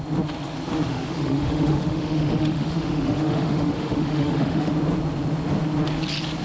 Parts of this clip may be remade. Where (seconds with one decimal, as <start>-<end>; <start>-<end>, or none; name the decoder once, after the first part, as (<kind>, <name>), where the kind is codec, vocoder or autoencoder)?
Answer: 0.9-4.7 (autoencoder, DAC-VAE)